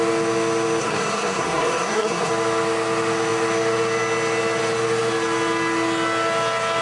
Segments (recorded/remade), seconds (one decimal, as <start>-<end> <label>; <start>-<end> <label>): 0.0-0.8 recorded; 0.8-2.3 remade; 2.3-6.8 recorded